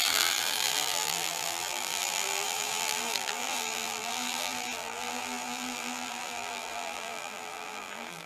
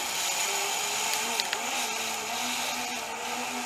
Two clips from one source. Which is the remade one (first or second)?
first